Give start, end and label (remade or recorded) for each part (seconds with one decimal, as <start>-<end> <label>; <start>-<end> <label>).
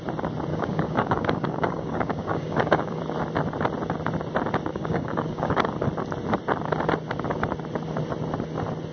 0.0-0.5 recorded; 0.5-3.0 remade; 3.0-4.7 recorded; 4.7-5.7 remade; 5.7-8.9 recorded